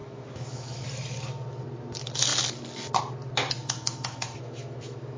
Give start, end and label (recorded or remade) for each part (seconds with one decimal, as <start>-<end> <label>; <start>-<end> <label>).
0.0-0.8 remade; 0.8-3.6 recorded; 3.6-5.2 remade